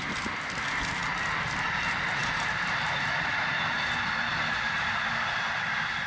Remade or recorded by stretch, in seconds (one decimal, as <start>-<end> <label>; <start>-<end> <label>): 0.0-6.1 recorded